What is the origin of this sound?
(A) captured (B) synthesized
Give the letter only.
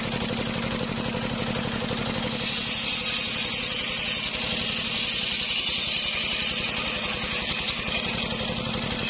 A